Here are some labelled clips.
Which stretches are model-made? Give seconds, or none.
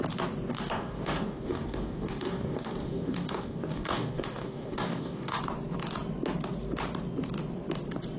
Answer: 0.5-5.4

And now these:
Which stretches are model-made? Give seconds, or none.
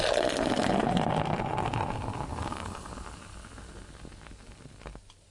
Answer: 2.3-2.9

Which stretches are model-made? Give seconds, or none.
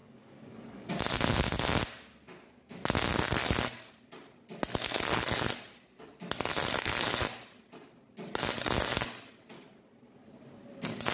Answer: 0.0-0.9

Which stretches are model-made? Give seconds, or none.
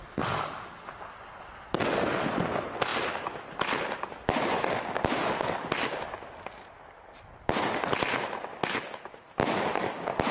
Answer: none